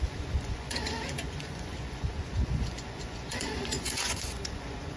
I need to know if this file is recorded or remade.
remade